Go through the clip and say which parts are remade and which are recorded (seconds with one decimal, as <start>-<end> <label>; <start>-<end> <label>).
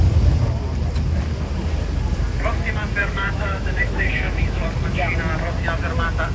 0.0-3.0 recorded; 3.0-4.6 remade; 4.6-6.3 recorded